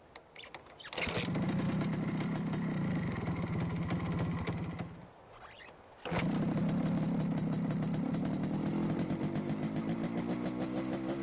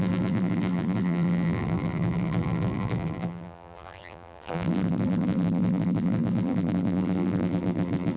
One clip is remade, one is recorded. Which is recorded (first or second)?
first